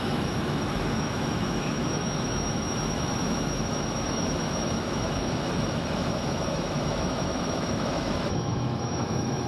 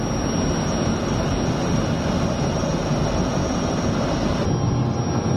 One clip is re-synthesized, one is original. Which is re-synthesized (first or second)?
first